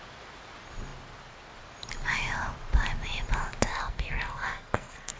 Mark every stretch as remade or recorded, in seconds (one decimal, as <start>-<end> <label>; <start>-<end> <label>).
0.0-3.7 recorded; 3.7-5.2 remade